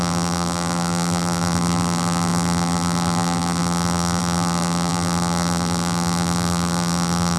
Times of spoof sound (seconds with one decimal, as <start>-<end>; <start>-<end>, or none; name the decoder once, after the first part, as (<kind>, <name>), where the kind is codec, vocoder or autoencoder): 0.0-7.4 (vocoder, BigVGAN v2)

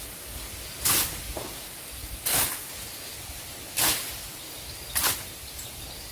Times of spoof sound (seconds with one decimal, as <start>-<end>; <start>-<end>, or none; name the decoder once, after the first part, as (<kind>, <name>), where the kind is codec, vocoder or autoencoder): none

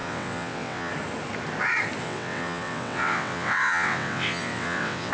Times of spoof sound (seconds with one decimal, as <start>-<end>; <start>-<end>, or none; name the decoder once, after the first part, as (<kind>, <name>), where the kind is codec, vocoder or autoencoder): 0.0-0.9 (vocoder, WaveNeXt); 2.0-5.1

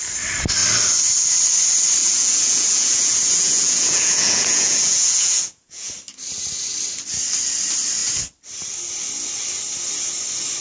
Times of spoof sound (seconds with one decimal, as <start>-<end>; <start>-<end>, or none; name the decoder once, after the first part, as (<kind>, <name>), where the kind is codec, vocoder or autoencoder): 2.0-5.9 (vocoder, Vocos)